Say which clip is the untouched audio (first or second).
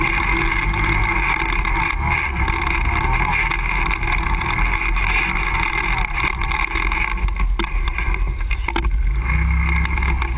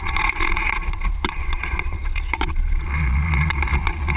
first